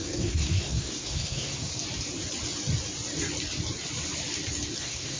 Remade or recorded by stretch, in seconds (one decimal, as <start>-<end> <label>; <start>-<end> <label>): 0.0-1.7 remade; 1.7-4.8 recorded; 4.8-5.2 remade